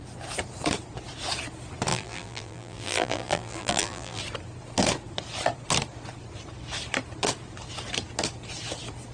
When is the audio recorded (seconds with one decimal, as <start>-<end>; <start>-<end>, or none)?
0.0-1.9; 4.2-9.1